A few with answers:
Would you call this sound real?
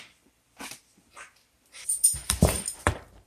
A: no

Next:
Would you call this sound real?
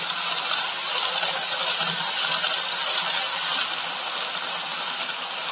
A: yes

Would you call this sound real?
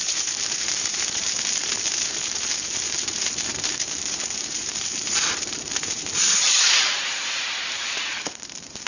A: no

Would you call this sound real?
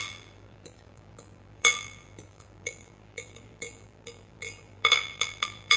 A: no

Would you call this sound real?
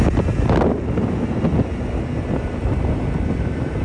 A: yes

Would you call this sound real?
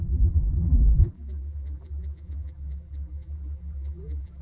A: no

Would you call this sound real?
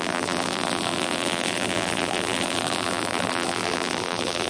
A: no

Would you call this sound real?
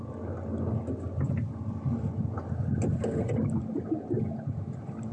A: yes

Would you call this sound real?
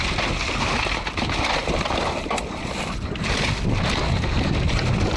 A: yes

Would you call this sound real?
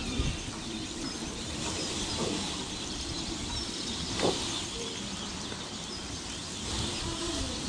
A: no